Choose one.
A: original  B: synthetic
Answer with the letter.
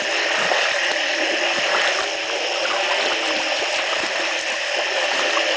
A